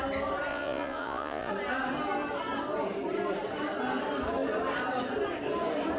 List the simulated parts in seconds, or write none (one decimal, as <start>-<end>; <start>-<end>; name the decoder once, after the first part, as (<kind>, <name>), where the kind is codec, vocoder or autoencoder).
0.5-1.5 (vocoder, Vocos)